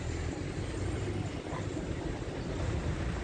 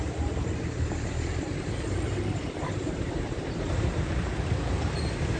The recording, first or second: first